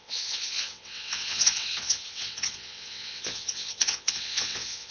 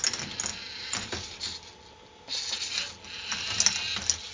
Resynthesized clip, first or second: first